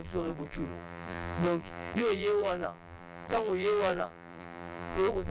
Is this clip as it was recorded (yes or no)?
no